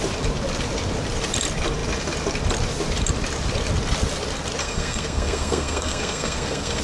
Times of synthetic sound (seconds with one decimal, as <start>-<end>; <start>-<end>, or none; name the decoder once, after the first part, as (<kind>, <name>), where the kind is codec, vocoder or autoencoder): 4.6-6.8 (codec, SNAC)